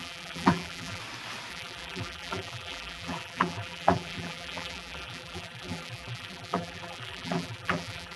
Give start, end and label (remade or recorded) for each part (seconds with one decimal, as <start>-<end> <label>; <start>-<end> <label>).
0.0-1.0 remade; 1.0-1.5 recorded; 1.5-8.2 remade